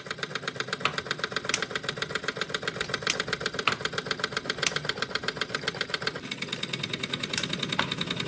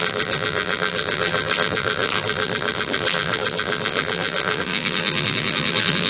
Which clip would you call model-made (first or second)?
second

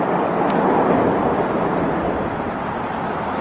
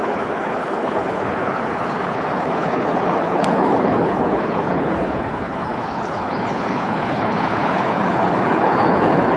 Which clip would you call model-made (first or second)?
second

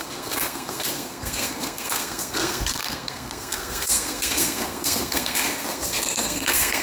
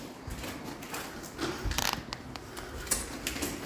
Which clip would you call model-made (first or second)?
first